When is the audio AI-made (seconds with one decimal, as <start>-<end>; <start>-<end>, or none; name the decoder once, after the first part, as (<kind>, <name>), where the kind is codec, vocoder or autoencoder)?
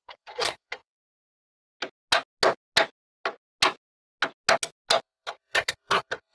0.0-1.2 (codec, SNAC); 5.0-6.3